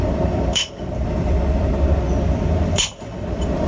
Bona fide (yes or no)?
no